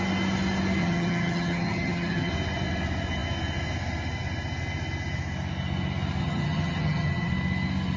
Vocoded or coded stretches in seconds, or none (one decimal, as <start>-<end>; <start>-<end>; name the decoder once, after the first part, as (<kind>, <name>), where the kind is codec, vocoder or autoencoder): 0.8-2.3 (vocoder, HiFi-GAN); 6.2-7.3